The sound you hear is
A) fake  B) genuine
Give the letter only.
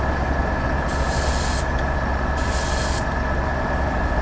B